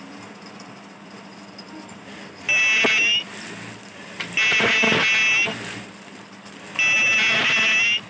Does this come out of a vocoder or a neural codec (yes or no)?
no